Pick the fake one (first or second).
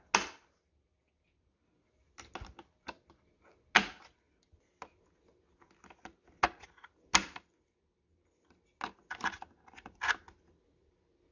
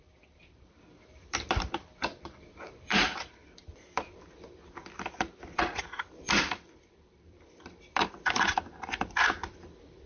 second